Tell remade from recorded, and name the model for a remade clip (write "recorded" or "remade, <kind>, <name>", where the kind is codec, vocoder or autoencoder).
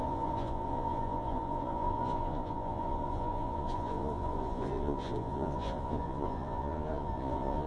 remade, vocoder, Vocos